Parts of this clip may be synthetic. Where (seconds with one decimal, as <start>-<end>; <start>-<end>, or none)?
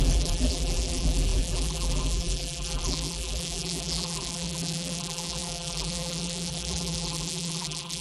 0.0-8.0